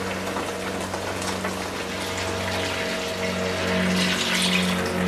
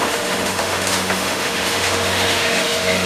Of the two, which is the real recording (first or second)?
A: first